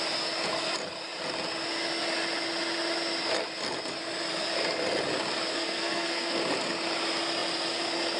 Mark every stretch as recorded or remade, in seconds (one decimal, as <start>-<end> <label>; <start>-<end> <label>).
0.0-5.5 recorded; 5.5-6.4 remade; 6.4-8.2 recorded